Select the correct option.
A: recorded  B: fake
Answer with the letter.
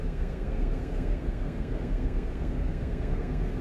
B